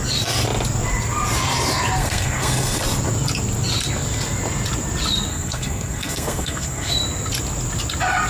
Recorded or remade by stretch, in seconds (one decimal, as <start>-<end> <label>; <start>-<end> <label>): 0.0-2.0 recorded; 2.0-2.8 remade; 2.8-5.3 recorded; 5.3-6.9 remade; 6.9-8.3 recorded